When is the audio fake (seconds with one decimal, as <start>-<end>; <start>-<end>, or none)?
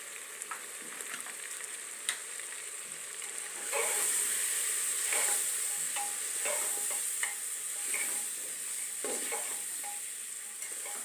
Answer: 2.2-5.7